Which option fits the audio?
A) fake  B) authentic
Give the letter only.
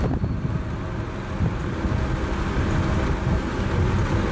B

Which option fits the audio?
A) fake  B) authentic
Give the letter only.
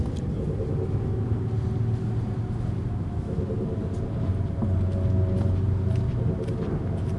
B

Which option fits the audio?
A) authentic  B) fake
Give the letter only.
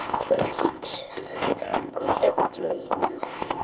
B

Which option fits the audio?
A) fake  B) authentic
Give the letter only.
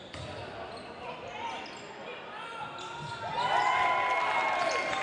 B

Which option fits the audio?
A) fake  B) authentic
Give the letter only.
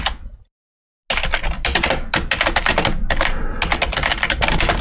B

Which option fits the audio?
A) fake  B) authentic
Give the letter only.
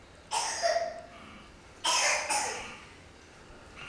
B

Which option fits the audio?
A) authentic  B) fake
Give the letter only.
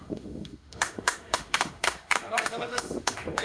B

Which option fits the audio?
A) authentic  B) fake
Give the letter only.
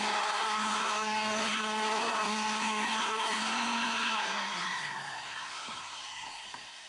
B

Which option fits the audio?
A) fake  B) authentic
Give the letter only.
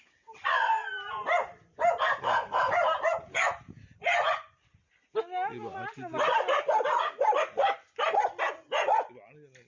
B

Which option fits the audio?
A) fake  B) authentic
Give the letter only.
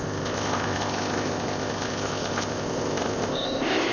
A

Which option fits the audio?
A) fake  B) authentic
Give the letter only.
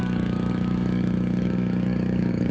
A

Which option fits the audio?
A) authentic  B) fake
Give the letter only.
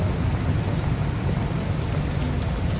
A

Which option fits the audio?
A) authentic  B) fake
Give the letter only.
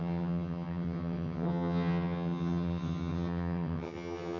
B